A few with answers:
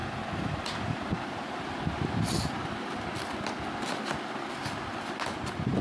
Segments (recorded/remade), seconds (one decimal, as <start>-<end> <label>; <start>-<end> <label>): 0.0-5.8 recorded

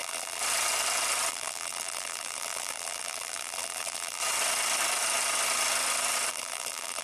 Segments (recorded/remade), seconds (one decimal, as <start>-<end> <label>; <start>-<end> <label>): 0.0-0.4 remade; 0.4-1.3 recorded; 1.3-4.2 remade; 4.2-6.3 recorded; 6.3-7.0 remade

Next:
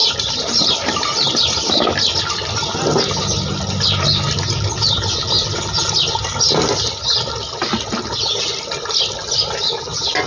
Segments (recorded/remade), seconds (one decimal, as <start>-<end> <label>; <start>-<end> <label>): 0.0-2.2 remade; 2.2-10.3 recorded

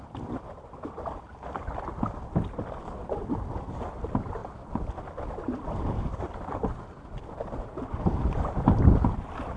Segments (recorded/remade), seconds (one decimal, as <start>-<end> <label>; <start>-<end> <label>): 0.0-9.6 recorded

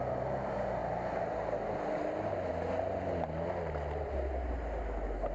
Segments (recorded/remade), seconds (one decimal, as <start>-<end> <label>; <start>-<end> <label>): 0.0-5.3 recorded